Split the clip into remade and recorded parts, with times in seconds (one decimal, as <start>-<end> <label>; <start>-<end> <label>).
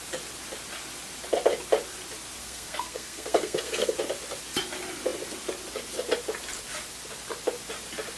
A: 0.0-2.4 recorded; 2.4-3.9 remade; 3.9-8.2 recorded